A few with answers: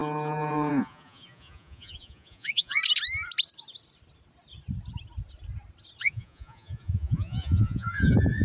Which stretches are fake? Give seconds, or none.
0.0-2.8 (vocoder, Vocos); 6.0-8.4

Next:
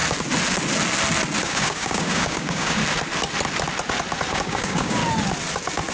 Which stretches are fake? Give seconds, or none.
1.4-2.8 (codec, DAC); 4.3-5.0

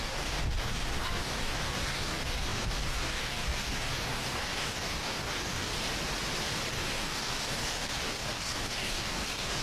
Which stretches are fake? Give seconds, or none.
0.0-5.7 (codec, DAC); 6.7-9.6